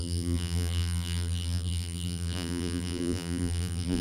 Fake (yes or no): yes